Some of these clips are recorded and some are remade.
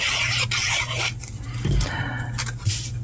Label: recorded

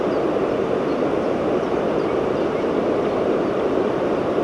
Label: recorded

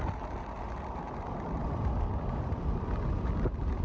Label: recorded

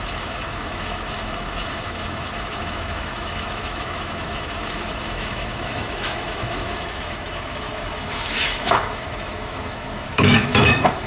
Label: remade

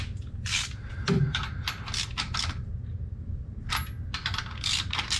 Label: recorded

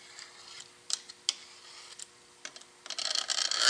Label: recorded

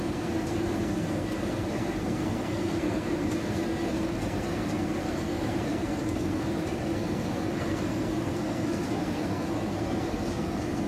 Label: remade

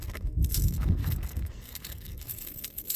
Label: remade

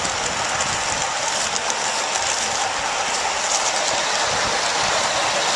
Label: recorded